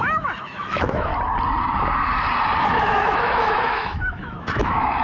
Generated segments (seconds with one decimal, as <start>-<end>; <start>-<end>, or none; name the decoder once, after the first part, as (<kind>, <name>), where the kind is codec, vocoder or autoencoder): 0.0-1.1 (autoencoder, DAC-VAE); 2.6-5.0